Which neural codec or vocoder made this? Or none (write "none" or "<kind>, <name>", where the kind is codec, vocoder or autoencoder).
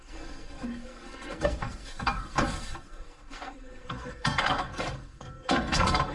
codec, SNAC